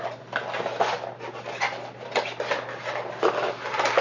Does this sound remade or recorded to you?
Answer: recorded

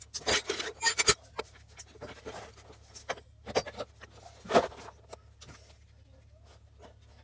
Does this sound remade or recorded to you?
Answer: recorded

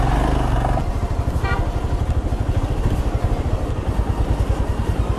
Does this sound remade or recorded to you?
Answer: recorded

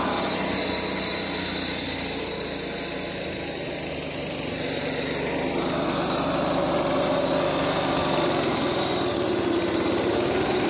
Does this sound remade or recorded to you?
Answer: recorded